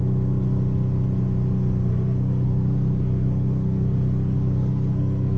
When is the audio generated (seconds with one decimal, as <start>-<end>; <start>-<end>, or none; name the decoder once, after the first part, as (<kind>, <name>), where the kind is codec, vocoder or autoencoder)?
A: 1.9-5.4 (codec, SNAC)